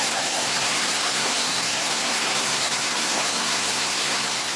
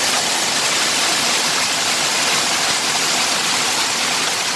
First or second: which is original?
second